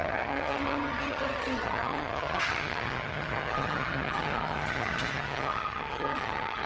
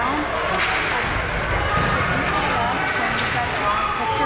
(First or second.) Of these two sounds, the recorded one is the second